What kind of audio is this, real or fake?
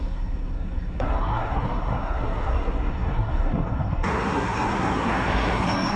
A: fake